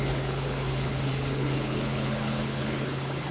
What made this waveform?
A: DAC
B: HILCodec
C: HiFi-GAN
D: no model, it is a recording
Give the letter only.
B